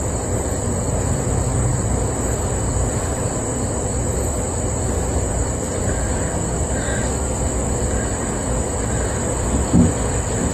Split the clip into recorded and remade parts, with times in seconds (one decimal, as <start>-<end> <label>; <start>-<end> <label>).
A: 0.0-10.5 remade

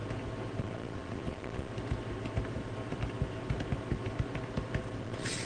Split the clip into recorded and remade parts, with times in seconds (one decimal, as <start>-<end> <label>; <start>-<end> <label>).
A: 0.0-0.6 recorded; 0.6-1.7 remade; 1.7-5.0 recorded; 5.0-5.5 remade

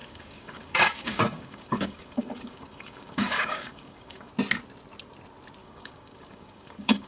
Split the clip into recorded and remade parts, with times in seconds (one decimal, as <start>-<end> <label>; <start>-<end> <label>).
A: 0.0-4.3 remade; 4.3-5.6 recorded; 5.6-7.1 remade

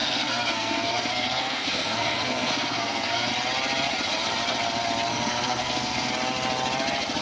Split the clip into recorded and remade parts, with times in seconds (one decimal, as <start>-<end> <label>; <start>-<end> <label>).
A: 0.0-3.3 remade; 3.3-5.1 recorded; 5.1-6.1 remade; 6.1-7.2 recorded

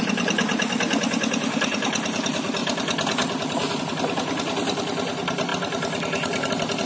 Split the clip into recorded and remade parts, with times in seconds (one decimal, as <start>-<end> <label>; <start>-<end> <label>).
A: 0.0-6.9 recorded

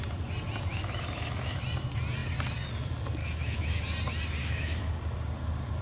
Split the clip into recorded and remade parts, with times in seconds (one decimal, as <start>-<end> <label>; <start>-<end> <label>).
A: 0.0-0.7 recorded; 0.7-1.6 remade; 1.6-3.2 recorded; 3.2-3.8 remade; 3.8-4.4 recorded; 4.4-4.9 remade; 4.9-5.8 recorded

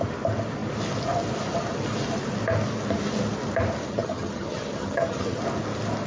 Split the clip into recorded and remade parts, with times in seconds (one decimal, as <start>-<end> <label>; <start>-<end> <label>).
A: 0.0-3.9 recorded; 3.9-5.4 remade; 5.4-6.1 recorded

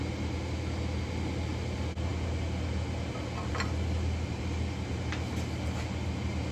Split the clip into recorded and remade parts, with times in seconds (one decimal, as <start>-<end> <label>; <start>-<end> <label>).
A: 0.0-6.5 recorded